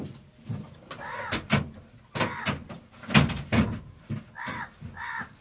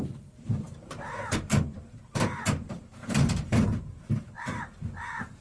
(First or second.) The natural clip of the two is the first